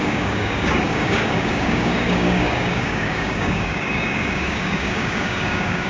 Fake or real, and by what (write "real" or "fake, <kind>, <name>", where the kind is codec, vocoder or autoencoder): fake, codec, DAC